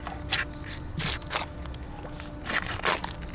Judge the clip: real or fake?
real